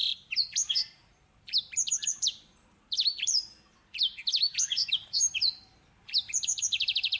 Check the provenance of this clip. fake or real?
fake